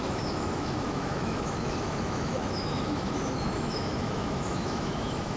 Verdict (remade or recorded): remade